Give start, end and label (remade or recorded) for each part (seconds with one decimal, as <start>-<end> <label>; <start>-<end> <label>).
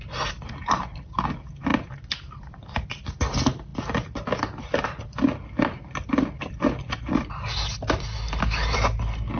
0.0-9.4 recorded